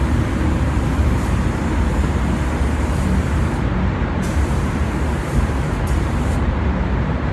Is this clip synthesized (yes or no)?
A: yes